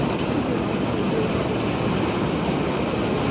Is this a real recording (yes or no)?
yes